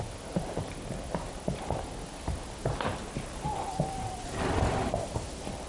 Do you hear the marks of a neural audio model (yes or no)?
no